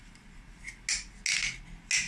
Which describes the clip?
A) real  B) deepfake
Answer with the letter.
A